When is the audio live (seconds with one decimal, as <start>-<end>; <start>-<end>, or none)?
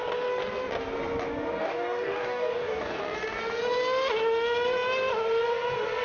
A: 0.0-1.6; 3.0-6.0